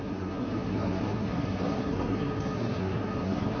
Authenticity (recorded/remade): remade